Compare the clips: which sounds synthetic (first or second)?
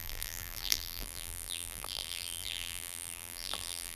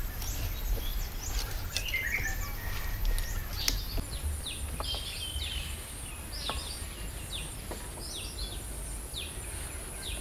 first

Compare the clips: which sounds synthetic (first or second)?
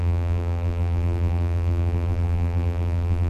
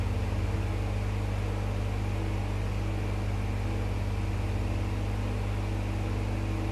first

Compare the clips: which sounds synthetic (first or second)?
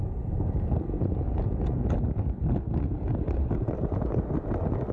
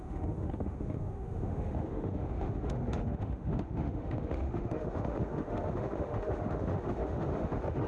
second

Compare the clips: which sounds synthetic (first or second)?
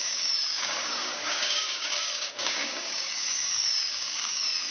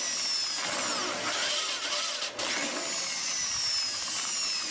first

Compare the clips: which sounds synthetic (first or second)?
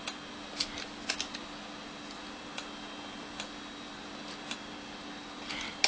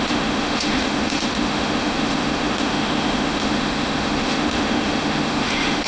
second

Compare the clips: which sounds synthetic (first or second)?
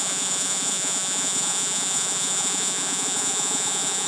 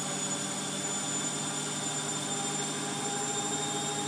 first